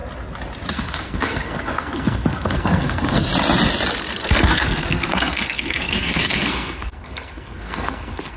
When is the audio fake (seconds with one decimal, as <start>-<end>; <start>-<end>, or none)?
0.7-3.3; 4.2-8.4